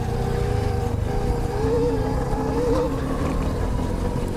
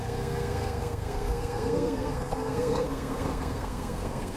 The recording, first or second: first